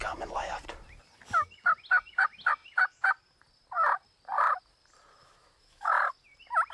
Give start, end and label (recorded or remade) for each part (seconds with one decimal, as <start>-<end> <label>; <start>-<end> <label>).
0.0-5.2 recorded; 5.2-6.1 remade; 6.1-6.7 recorded